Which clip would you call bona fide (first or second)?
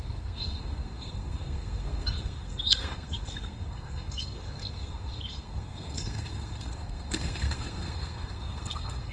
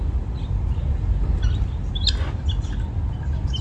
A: second